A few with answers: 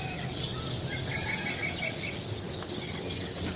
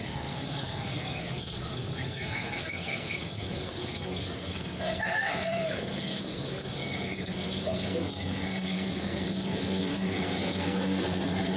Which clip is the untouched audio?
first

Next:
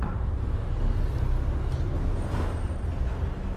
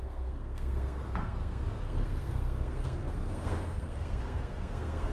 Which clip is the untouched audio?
first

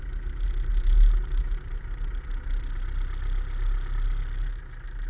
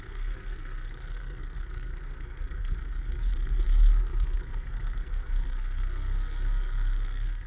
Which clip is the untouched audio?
first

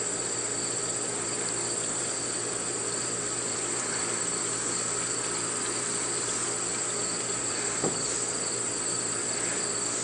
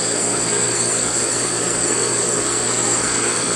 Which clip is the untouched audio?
first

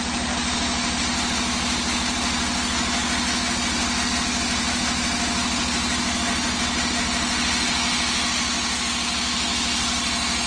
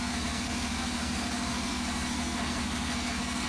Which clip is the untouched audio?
first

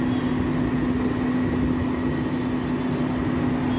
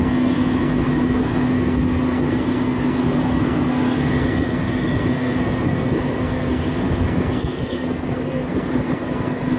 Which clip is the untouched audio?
first